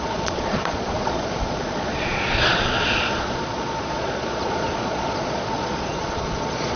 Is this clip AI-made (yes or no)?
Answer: yes